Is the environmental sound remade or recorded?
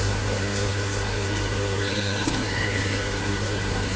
remade